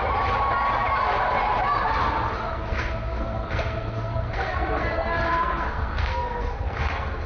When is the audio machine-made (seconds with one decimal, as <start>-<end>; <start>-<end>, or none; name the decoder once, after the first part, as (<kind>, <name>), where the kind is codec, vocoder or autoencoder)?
2.5-7.3 (codec, SNAC)

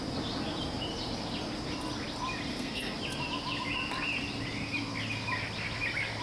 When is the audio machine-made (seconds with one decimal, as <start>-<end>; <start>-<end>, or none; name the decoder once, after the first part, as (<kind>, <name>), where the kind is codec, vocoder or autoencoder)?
2.5-3.0 (codec, SNAC)

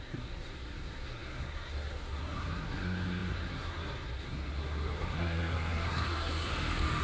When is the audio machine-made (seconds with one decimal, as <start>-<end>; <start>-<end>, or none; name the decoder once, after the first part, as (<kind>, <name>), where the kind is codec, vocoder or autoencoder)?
0.0-6.5 (codec, SNAC)

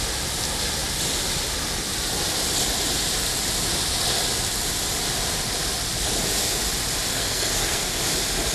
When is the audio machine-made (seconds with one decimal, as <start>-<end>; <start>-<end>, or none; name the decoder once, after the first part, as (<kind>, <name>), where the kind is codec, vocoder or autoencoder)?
7.1-8.0 (codec, SNAC)

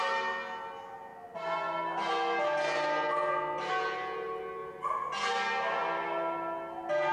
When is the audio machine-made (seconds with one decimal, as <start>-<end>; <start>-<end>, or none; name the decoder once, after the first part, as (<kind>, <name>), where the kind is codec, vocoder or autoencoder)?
none